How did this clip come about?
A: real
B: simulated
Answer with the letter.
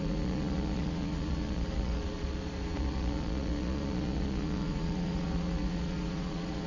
B